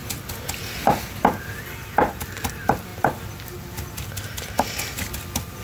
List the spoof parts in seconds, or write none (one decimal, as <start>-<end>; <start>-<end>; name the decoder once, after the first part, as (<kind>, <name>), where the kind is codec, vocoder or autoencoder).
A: 2.3-2.9 (vocoder, BigVGAN v2); 5.1-5.6